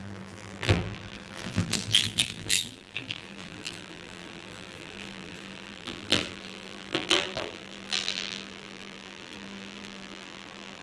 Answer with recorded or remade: remade